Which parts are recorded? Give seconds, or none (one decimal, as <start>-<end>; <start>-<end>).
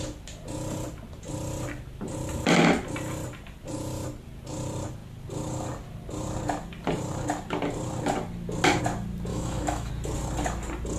0.0-9.3; 9.9-11.0